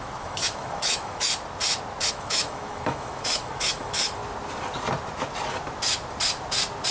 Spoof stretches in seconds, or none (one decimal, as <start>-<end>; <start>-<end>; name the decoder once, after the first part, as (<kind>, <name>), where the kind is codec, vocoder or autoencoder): 0.0-1.3 (autoencoder, DAC-VAE); 2.1-4.2